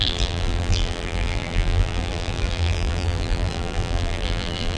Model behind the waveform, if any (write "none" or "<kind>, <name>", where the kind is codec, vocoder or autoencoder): vocoder, BigVGAN v2